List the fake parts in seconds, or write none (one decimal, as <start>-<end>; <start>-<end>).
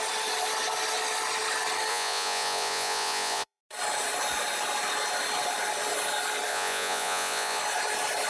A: 1.9-3.6; 6.5-7.6